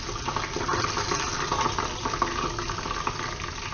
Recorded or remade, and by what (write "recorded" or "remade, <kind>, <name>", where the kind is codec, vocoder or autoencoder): recorded